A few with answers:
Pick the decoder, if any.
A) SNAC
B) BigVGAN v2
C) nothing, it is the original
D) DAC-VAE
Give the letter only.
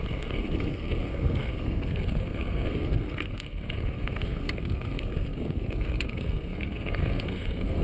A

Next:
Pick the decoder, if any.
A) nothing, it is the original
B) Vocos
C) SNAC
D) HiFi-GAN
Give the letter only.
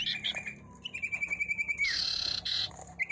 A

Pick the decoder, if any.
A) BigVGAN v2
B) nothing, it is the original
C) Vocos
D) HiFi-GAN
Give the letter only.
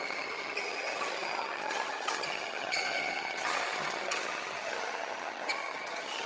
D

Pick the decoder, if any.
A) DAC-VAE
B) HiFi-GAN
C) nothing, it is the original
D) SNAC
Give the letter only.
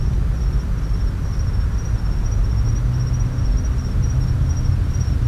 C